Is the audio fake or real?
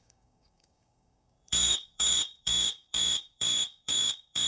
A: fake